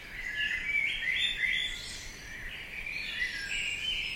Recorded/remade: recorded